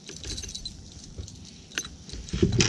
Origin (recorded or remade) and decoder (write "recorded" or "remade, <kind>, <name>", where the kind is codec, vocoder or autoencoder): recorded